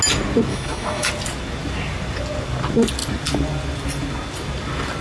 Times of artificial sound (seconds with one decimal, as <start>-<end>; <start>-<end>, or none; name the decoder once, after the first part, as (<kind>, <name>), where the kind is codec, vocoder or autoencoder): 0.5-1.1 (autoencoder, DAC-VAE)